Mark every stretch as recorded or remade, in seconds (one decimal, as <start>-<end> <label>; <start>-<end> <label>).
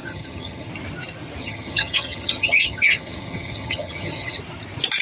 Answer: 0.0-0.7 remade; 0.7-1.4 recorded; 1.4-4.4 remade; 4.4-5.0 recorded